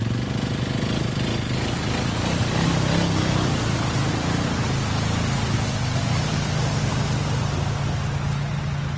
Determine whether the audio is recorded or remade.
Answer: recorded